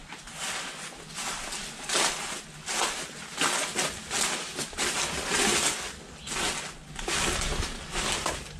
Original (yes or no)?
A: yes